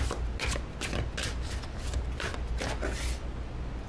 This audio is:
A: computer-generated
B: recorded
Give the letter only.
B